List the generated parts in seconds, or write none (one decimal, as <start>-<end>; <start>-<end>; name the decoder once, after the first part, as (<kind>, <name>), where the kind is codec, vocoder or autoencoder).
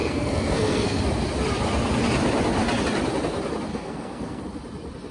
0.0-1.0 (codec, SNAC); 3.7-4.4